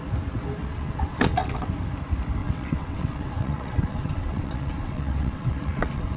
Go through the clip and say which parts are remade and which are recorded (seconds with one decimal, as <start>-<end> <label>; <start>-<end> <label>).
0.0-0.6 recorded; 0.6-1.7 remade; 1.7-2.4 recorded; 2.4-6.2 remade